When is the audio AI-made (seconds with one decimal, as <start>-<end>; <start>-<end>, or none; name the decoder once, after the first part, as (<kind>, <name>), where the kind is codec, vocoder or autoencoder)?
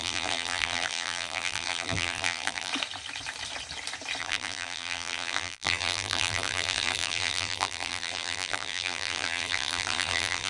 0.0-2.7 (vocoder, BigVGAN v2); 4.2-10.5